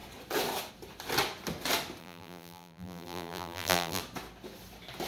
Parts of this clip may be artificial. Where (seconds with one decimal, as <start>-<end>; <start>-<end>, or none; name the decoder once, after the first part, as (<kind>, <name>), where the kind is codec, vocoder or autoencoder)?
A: 2.0-4.0 (vocoder, BigVGAN v2)